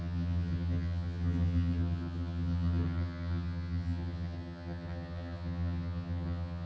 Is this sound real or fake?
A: fake